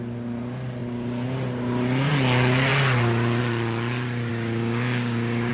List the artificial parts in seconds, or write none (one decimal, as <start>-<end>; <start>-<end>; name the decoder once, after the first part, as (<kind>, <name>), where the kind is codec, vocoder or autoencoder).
4.3-5.5 (codec, DAC)